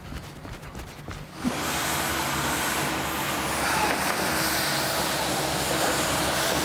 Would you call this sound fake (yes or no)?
no